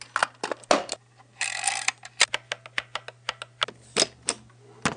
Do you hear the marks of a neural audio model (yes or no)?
no